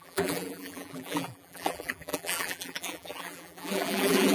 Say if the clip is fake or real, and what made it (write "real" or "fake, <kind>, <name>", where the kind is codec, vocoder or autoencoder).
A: fake, vocoder, BigVGAN v2